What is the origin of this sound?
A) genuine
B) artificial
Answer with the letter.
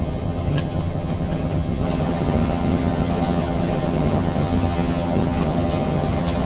B